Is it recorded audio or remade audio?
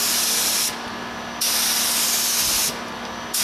recorded